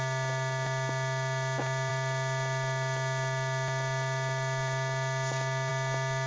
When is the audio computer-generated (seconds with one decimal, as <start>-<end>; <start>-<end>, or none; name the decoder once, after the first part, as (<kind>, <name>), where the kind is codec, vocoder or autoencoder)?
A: none